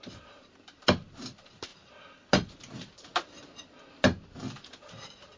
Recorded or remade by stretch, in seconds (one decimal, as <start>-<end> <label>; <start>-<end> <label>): 0.0-5.4 recorded